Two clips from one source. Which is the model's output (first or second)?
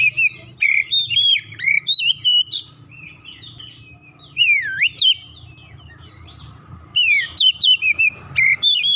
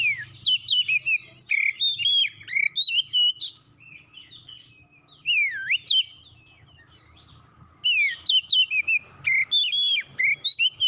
first